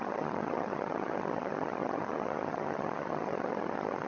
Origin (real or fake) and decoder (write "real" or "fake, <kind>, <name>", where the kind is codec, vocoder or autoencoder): fake, vocoder, HiFi-GAN